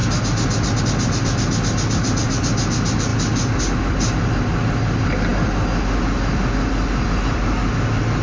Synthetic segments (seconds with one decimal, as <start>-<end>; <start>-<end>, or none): none